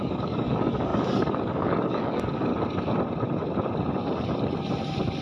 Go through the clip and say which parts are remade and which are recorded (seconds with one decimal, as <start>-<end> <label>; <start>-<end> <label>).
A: 0.0-2.5 remade; 2.5-5.2 recorded